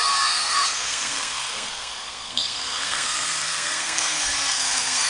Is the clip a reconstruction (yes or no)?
yes